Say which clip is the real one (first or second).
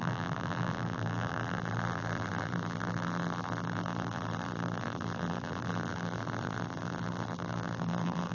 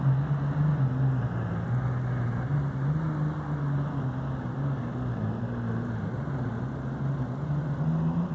second